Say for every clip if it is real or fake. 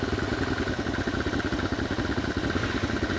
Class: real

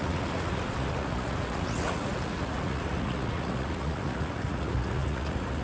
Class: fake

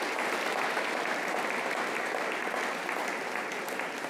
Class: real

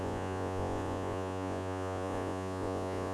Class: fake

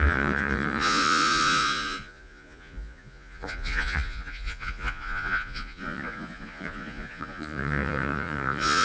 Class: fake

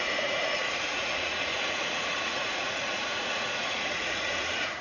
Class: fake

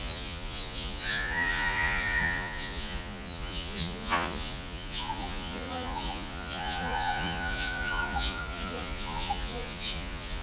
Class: fake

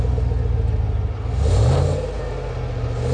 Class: real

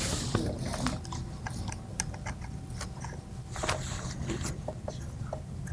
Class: real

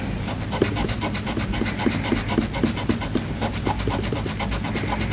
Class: real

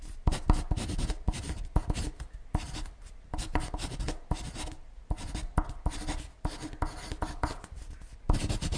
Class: real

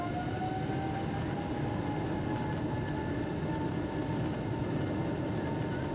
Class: real